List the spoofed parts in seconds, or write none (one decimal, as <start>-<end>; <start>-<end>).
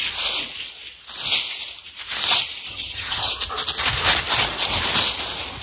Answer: 2.7-3.3